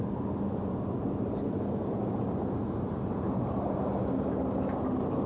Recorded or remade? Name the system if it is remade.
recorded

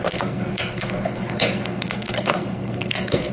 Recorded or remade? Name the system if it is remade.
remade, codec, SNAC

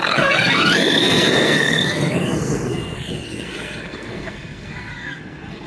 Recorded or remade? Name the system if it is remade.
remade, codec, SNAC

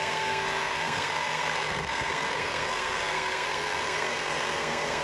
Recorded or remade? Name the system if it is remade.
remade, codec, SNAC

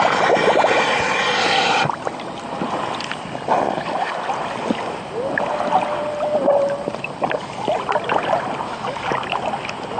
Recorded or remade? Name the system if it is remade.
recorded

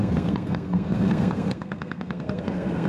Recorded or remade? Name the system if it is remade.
remade, codec, SNAC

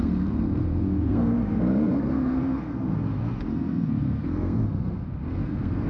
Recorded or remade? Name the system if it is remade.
remade, codec, SNAC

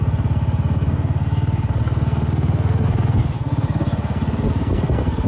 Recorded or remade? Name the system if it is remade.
remade, codec, SNAC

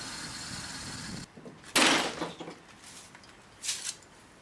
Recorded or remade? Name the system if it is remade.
recorded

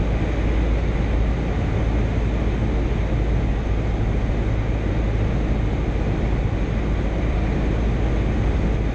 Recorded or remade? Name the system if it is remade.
recorded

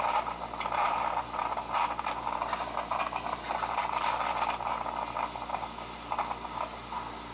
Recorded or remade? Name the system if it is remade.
recorded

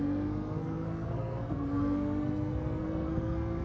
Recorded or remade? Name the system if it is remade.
remade, codec, SNAC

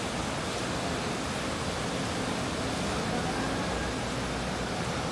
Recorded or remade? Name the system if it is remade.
recorded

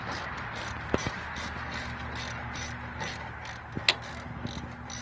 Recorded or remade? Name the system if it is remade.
recorded